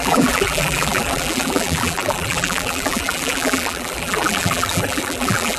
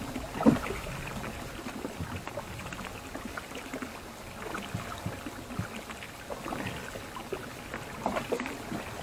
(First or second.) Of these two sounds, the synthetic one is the first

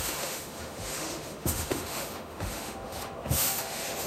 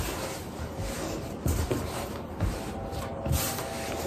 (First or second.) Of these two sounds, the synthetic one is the first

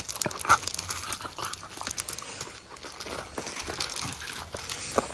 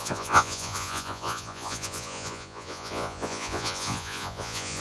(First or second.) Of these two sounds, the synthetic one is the second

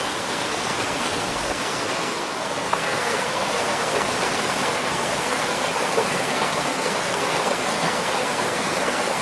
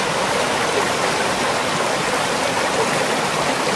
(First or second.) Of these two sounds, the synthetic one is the first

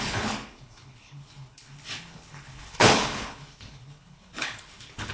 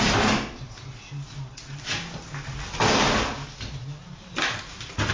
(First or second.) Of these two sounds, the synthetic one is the first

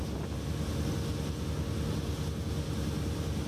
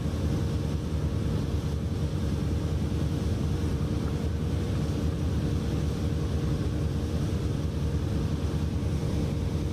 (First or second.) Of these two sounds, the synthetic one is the second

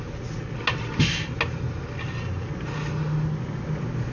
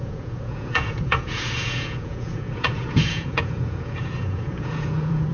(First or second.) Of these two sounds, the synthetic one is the second